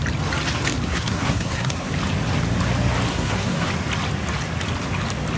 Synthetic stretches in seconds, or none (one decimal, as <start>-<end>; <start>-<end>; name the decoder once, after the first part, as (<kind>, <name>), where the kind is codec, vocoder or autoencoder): 0.9-1.9 (codec, SNAC); 3.1-3.7